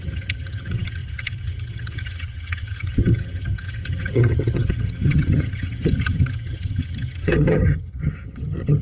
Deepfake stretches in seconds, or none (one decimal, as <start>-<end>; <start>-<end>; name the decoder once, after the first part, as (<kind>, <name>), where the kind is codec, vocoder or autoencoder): 0.0-8.8 (vocoder, HiFi-GAN)